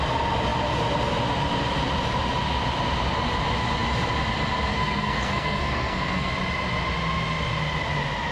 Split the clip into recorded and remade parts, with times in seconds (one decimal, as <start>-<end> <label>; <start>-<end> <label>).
0.0-4.7 recorded; 4.7-6.3 remade; 6.3-8.3 recorded